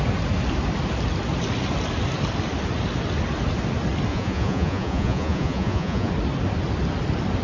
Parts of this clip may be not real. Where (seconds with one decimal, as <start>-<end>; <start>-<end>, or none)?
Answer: 4.1-6.1